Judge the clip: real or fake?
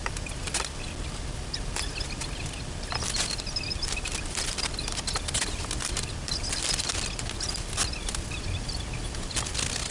real